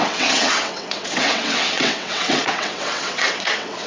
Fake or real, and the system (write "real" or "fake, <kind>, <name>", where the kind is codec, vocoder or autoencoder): fake, vocoder, WaveNeXt